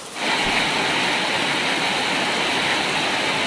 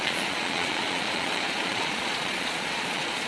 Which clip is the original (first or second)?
first